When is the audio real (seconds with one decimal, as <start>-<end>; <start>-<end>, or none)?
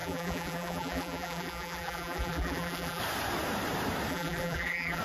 3.0-4.1